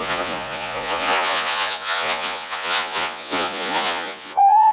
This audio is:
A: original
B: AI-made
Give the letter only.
B